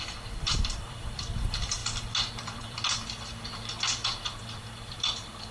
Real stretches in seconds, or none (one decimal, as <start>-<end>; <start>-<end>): none